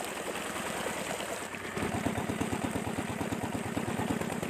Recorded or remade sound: recorded